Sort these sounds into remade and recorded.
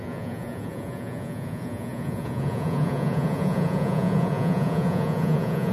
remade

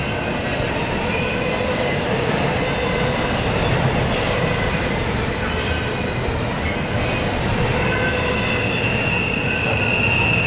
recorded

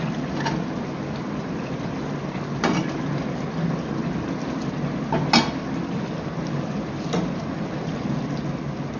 recorded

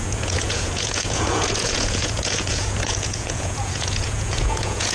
remade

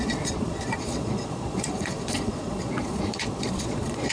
remade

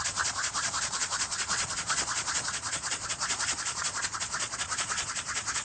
remade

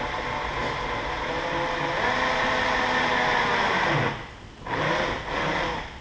recorded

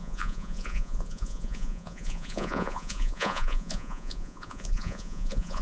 remade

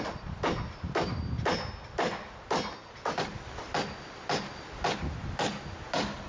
recorded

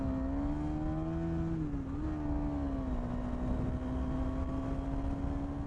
recorded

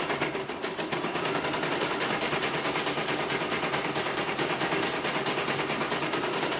recorded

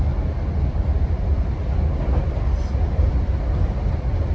recorded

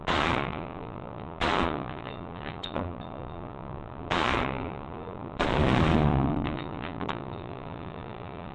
remade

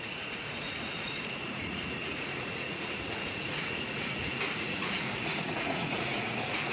remade